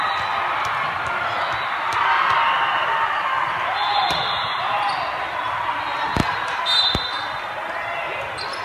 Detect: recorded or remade recorded